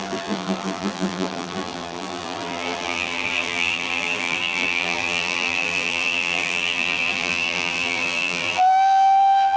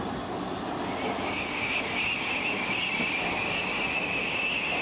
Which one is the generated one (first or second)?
first